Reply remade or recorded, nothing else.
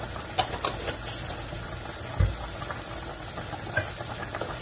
recorded